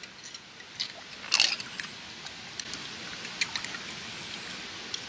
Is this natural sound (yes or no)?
yes